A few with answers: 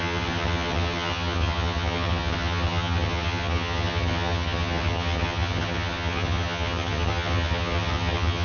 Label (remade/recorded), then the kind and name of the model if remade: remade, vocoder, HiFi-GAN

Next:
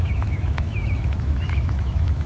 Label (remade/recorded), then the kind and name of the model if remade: remade, autoencoder, DAC-VAE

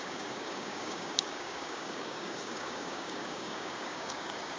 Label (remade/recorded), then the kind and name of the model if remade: remade, codec, DAC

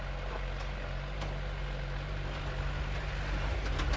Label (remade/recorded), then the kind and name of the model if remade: recorded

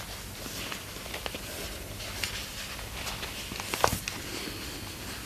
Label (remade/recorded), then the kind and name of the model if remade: recorded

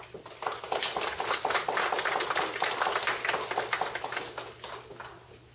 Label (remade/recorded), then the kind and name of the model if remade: recorded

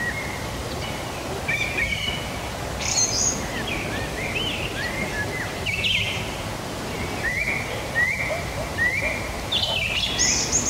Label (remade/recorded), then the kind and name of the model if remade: recorded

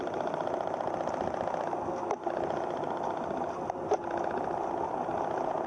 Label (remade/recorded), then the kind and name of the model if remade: recorded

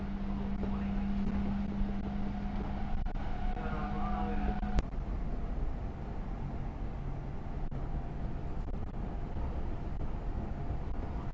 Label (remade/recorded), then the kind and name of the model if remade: recorded